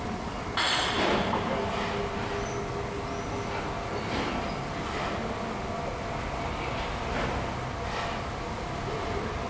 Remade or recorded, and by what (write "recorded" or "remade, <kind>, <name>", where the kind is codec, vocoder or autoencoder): recorded